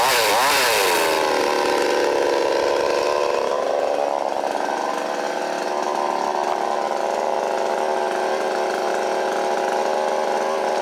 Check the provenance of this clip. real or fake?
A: real